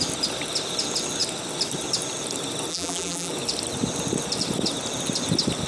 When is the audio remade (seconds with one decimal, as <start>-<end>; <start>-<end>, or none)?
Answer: 2.7-3.3